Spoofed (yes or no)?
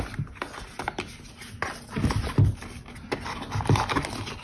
no